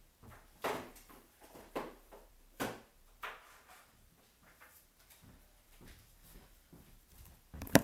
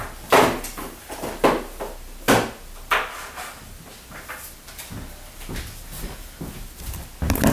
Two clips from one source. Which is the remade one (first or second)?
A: first